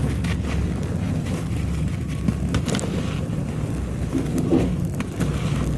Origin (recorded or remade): recorded